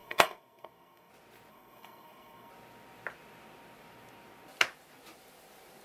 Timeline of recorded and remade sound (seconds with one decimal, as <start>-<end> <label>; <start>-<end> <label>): 0.0-1.1 remade; 1.1-1.5 recorded; 1.5-2.5 remade; 2.5-5.8 recorded